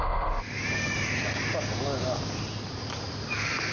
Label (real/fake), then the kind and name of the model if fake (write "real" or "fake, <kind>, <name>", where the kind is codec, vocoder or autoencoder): real